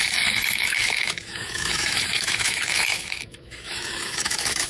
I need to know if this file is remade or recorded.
remade